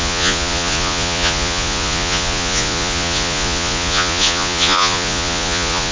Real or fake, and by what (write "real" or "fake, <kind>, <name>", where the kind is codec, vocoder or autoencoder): fake, vocoder, Vocos